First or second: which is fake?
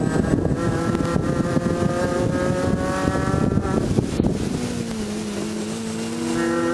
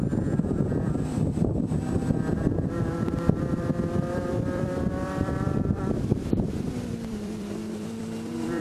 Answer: second